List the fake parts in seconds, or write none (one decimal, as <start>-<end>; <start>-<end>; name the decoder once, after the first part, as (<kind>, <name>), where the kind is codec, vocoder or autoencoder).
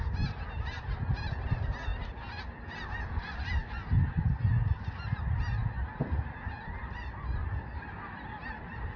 none